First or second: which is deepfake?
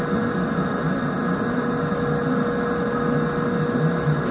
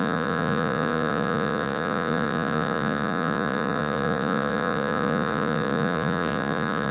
second